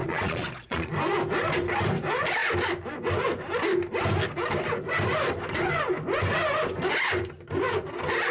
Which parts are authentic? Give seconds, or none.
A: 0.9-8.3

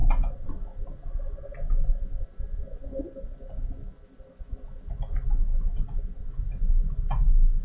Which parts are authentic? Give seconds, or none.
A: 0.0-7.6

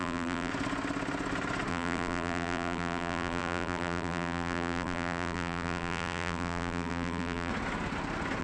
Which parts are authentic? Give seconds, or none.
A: 0.5-1.7; 7.5-8.4

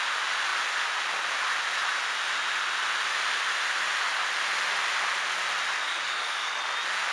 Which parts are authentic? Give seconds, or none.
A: 0.0-5.8; 6.6-7.1

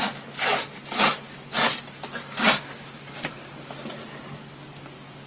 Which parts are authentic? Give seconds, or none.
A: 0.0-5.3